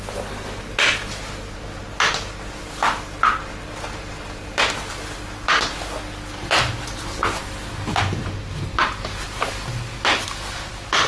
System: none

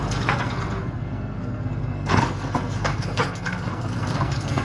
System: codec, SNAC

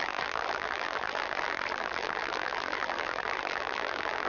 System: vocoder, BigVGAN v2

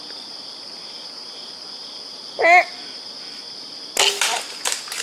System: none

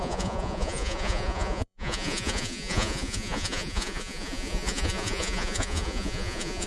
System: vocoder, Vocos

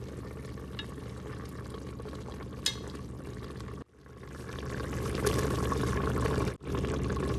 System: none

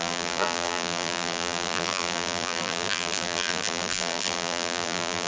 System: vocoder, BigVGAN v2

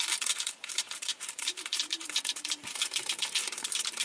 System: vocoder, BigVGAN v2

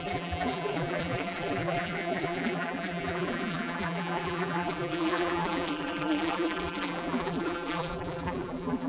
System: vocoder, BigVGAN v2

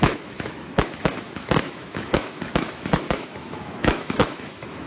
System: autoencoder, DAC-VAE